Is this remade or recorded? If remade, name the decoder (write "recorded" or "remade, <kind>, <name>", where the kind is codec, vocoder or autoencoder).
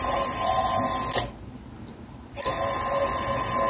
recorded